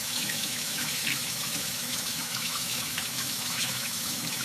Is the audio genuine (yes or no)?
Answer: no